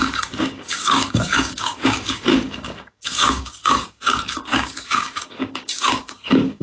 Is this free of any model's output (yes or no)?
no